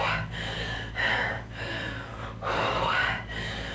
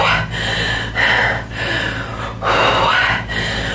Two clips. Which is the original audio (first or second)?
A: second